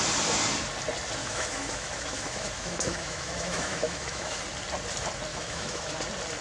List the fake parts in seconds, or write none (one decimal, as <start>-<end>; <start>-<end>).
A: 1.2-4.4; 5.3-5.9